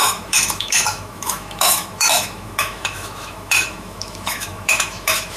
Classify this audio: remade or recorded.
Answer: remade